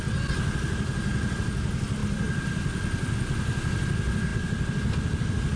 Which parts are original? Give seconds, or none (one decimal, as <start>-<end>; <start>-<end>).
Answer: 0.0-5.6